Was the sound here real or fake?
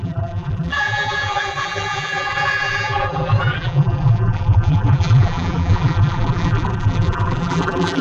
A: fake